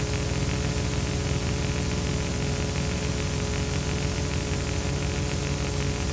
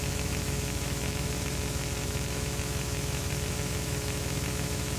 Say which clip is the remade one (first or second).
second